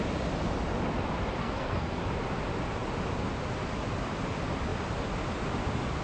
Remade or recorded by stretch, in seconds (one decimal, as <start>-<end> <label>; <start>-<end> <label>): 0.0-1.4 recorded; 1.4-2.0 remade; 2.0-6.0 recorded